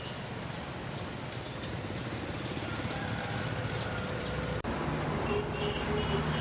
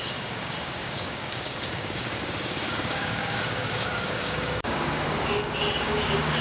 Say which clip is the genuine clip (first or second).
first